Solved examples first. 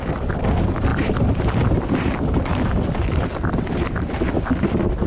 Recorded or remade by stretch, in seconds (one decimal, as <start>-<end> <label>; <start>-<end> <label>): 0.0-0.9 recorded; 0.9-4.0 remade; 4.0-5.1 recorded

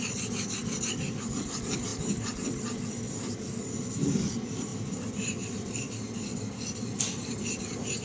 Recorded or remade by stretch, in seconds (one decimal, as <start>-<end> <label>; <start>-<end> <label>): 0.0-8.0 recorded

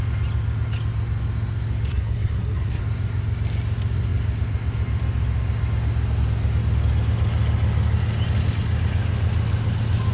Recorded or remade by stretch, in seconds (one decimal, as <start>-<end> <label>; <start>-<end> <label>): 0.0-1.9 recorded; 1.9-2.8 remade; 2.8-10.1 recorded

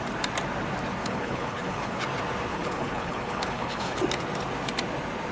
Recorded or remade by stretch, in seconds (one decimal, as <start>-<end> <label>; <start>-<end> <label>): 0.0-1.0 recorded; 1.0-2.0 remade; 2.0-2.5 recorded; 2.5-4.0 remade; 4.0-5.3 recorded

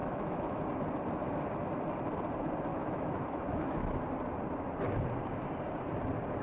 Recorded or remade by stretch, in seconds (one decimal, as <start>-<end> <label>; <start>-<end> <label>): 0.0-0.6 remade; 0.6-2.7 recorded; 2.7-4.0 remade; 4.0-6.4 recorded

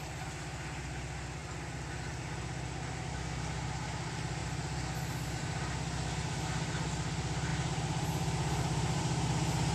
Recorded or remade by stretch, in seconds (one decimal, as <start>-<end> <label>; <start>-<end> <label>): 0.0-7.5 recorded; 7.5-9.0 remade; 9.0-9.7 recorded

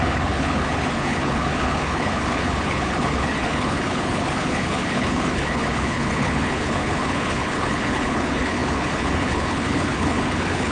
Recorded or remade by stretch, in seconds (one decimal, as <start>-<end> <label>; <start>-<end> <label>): 0.0-10.7 remade

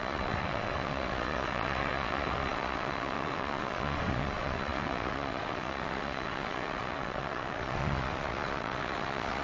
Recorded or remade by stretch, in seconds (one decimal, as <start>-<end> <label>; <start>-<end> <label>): 0.0-9.4 remade